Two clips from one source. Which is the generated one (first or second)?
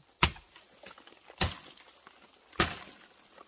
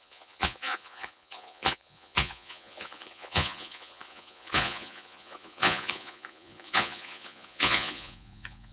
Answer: second